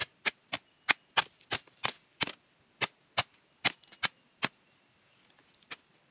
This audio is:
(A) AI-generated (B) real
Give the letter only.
B